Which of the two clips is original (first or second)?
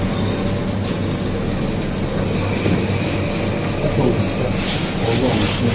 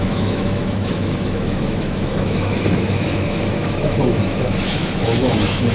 first